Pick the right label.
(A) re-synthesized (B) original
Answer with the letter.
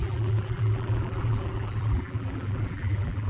A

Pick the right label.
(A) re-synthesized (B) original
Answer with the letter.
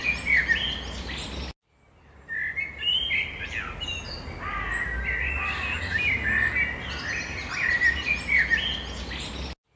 B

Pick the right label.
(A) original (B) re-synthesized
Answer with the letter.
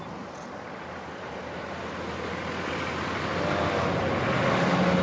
A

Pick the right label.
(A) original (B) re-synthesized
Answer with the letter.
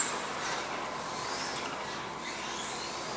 A